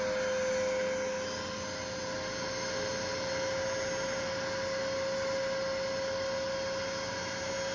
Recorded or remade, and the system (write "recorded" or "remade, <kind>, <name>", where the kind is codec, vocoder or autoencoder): recorded